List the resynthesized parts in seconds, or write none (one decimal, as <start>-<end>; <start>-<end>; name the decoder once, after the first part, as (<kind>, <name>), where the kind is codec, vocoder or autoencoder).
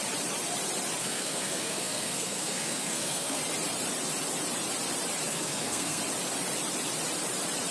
1.0-3.4 (codec, SNAC); 5.3-6.0